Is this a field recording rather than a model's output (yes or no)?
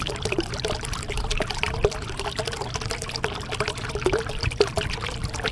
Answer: no